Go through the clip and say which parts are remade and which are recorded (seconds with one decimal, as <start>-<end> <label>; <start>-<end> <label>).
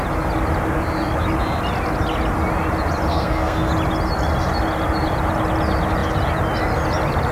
0.0-3.1 recorded; 3.1-3.7 remade; 3.7-7.3 recorded